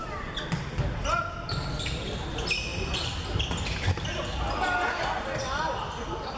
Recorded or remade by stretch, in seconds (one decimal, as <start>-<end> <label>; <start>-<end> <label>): 0.0-6.4 recorded